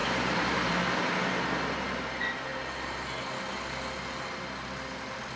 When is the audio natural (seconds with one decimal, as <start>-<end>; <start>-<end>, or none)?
0.8-5.4